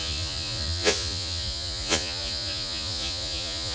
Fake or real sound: fake